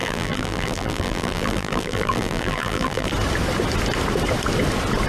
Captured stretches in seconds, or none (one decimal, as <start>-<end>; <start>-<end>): 3.1-5.1

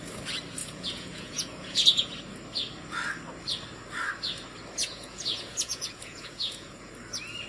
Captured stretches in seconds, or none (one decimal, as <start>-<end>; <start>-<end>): 0.0-0.6; 2.1-4.8; 6.9-7.5

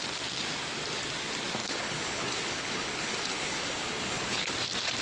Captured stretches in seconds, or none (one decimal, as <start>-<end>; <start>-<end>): 0.0-1.6; 4.5-5.0

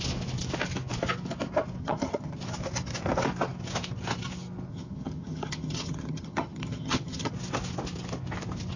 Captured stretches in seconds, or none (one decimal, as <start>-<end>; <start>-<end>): 0.0-1.8; 2.4-4.7; 7.3-8.8

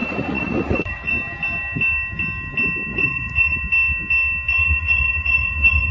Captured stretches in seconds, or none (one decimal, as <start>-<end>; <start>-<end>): 1.1-2.9; 3.6-4.5

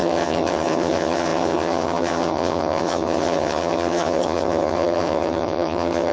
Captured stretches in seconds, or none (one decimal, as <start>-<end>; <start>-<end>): none

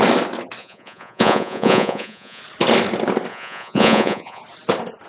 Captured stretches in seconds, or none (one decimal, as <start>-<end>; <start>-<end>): 0.0-0.6; 2.4-3.3; 4.4-5.1

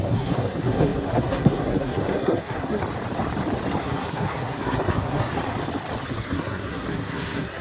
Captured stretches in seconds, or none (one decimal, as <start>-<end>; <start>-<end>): 2.8-3.8; 5.3-6.1